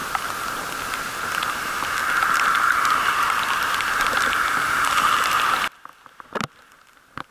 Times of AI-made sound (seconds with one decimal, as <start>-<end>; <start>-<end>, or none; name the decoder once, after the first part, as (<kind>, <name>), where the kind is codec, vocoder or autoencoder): none